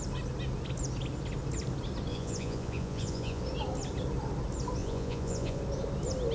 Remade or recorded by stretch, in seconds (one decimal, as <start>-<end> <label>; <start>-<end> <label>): 0.0-2.1 recorded; 2.1-3.4 remade; 3.4-4.8 recorded; 4.8-5.6 remade; 5.6-6.3 recorded